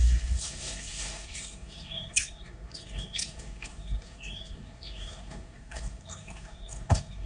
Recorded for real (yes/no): no